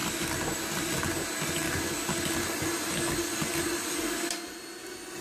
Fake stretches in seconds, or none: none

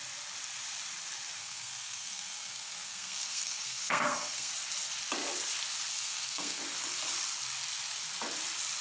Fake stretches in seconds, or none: 1.4-4.5 (codec, SNAC); 5.9-6.6

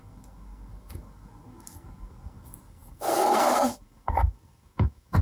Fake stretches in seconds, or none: 0.0-5.2 (codec, SNAC)